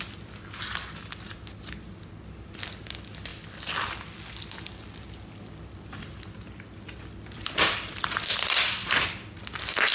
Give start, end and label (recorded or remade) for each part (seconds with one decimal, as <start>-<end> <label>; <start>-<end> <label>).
0.0-9.9 recorded